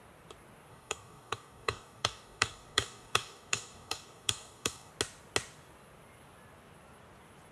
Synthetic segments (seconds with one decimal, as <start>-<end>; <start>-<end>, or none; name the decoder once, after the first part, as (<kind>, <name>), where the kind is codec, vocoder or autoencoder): 0.7-4.9 (codec, DAC)